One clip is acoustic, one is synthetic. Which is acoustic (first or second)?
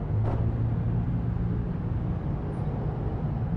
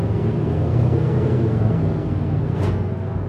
first